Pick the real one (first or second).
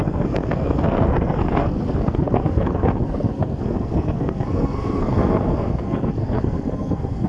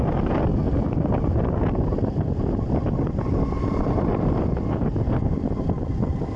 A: second